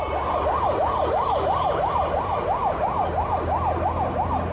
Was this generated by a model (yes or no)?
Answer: no